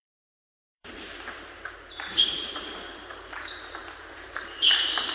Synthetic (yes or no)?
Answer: yes